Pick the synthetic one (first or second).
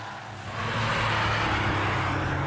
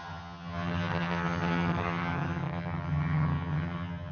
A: second